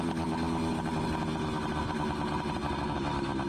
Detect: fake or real real